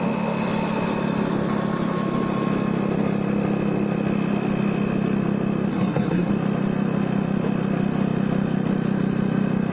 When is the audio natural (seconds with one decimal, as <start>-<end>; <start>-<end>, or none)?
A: 0.0-5.7; 6.3-9.7